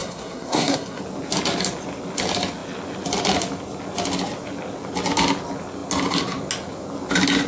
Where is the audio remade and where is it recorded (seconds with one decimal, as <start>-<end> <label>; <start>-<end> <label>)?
0.0-1.0 remade; 1.0-7.5 recorded